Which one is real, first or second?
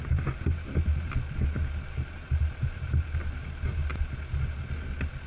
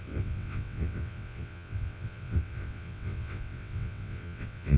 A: first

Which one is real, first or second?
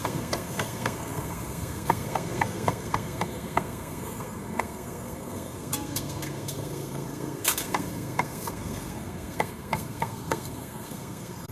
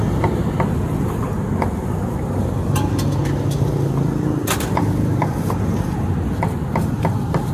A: second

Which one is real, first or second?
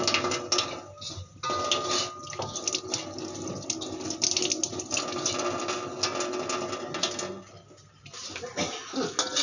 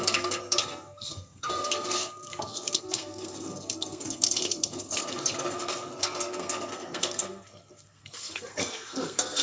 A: first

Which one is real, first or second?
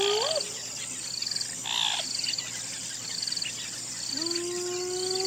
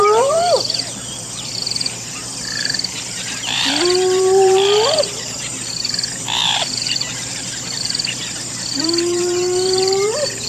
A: first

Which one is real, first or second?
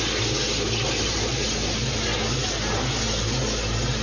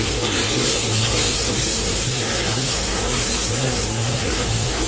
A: first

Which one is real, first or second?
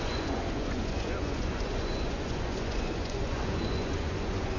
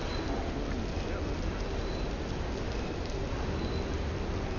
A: second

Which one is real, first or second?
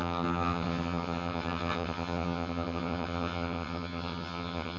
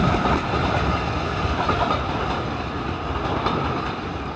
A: second